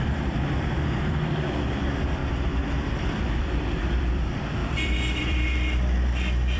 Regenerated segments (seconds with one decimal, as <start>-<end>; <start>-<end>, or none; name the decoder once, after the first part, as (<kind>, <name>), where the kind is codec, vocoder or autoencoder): 0.0-6.6 (vocoder, BigVGAN v2)